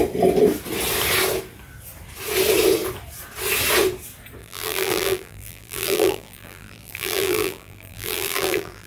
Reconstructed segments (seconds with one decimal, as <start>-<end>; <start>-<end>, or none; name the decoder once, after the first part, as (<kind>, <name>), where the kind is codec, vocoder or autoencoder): 4.4-8.9 (vocoder, BigVGAN v2)